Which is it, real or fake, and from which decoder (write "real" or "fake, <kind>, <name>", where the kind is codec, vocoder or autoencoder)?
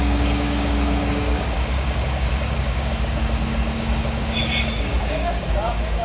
fake, codec, DAC